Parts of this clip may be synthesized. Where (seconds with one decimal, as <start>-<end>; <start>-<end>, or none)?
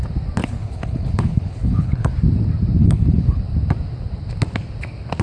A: 0.4-2.1; 2.8-3.4